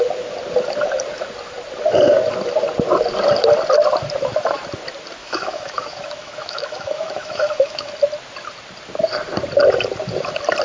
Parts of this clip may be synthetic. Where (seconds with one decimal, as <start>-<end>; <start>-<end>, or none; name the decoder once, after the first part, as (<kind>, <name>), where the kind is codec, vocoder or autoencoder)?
5.2-7.9 (autoencoder, DAC-VAE)

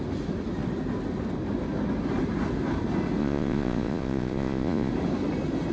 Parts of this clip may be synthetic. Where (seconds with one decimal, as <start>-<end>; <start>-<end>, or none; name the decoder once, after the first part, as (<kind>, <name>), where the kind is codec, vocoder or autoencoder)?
3.2-4.9 (vocoder, Vocos)